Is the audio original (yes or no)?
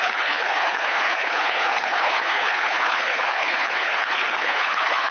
no